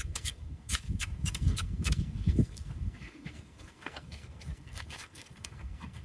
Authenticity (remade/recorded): remade